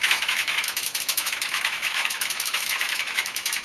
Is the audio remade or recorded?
remade